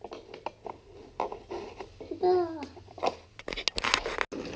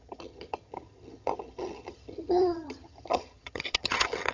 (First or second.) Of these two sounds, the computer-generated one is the second